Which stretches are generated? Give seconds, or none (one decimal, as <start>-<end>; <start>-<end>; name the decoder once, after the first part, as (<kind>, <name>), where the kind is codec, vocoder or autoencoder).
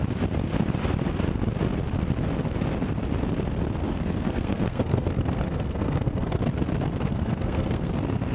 3.8-6.4 (codec, SNAC); 7.1-7.9